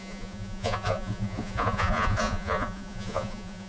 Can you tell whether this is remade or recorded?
remade